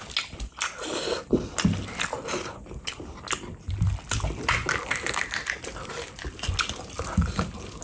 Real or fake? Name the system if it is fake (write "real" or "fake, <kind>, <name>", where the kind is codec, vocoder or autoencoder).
real